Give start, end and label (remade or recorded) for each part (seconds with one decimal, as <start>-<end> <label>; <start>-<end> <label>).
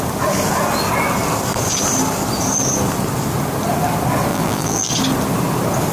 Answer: 0.0-4.3 recorded; 4.3-4.9 remade; 4.9-5.9 recorded